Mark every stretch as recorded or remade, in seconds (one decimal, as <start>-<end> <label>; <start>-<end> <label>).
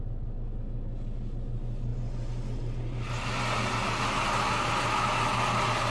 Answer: 0.0-5.9 recorded